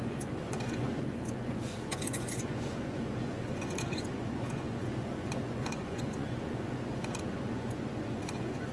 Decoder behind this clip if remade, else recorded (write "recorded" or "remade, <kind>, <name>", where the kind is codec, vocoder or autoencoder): remade, vocoder, Vocos